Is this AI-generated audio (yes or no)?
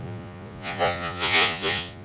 yes